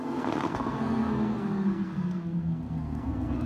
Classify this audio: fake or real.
fake